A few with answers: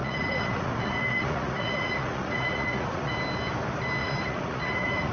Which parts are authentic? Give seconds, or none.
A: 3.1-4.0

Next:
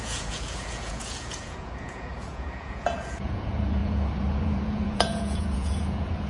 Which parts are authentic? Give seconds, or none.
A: none